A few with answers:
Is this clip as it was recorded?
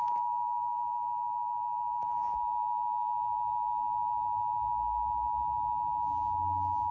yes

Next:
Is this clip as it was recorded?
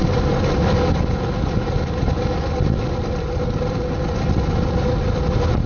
yes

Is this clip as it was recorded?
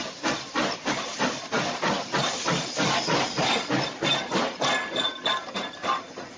yes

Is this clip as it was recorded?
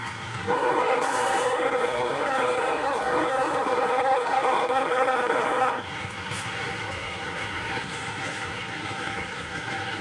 no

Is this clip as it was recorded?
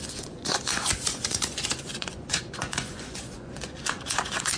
no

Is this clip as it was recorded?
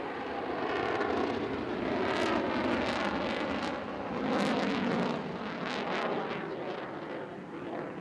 yes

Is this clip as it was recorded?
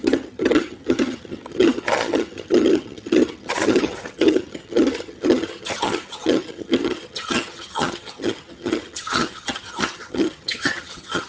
no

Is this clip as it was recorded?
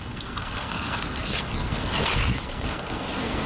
no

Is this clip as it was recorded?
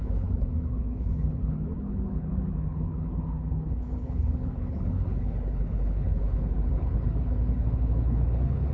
no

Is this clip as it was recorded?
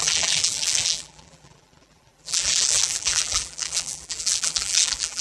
no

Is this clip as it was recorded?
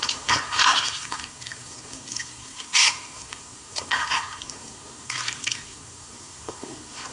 no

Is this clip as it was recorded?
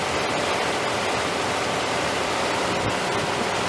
yes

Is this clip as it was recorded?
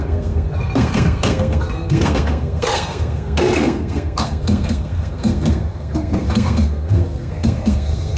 no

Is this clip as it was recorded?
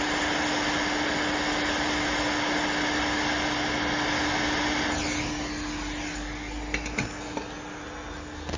yes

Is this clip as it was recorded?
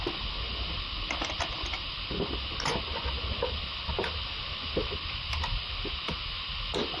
yes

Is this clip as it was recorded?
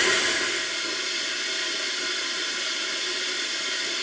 yes